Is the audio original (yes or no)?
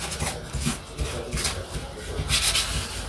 yes